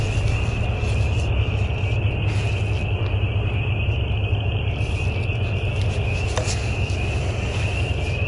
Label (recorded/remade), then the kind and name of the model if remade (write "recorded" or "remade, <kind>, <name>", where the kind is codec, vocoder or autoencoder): recorded